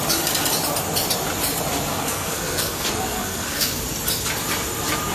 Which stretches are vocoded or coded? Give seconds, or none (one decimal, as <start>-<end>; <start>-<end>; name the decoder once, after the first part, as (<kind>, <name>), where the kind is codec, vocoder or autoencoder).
1.9-3.8 (codec, SNAC)